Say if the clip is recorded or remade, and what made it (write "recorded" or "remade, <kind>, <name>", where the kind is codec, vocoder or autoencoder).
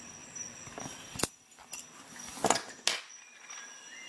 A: recorded